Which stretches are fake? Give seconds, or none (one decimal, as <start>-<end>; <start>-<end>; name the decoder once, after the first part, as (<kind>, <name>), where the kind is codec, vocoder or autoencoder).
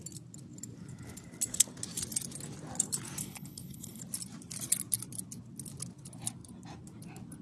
3.2-4.0 (codec, HILCodec)